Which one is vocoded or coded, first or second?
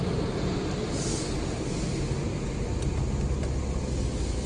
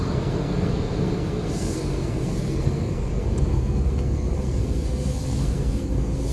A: second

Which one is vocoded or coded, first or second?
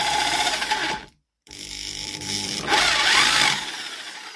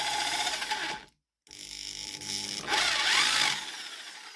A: first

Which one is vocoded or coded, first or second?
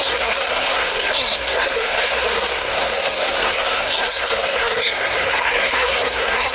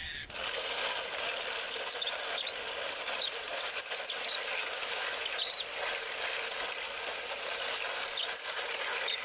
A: first